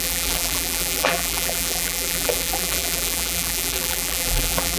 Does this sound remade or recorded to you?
remade